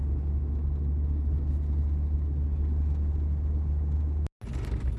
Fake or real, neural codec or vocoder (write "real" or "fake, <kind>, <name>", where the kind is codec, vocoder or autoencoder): real